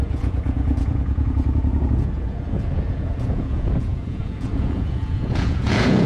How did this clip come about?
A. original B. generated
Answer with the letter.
B